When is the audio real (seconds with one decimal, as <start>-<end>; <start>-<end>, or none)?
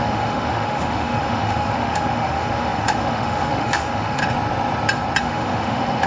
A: 4.2-5.2